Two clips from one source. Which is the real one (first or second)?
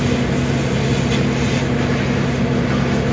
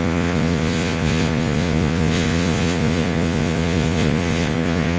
first